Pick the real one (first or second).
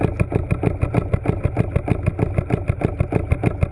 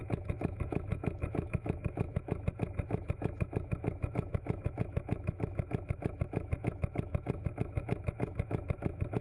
first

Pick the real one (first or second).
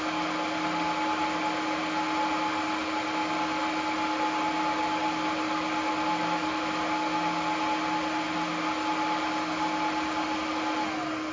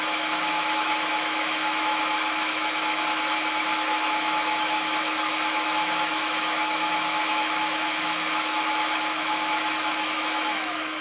first